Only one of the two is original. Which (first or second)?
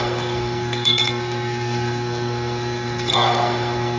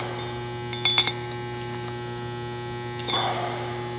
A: second